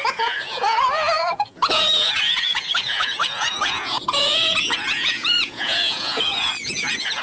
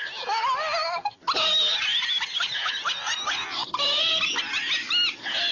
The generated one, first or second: first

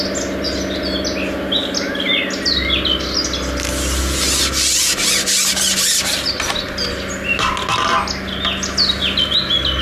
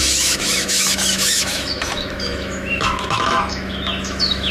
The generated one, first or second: second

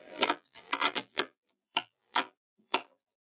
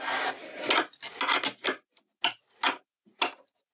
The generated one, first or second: first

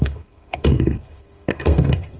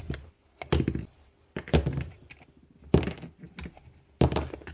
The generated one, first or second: first